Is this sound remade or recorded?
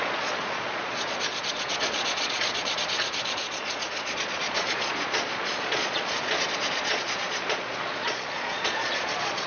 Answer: remade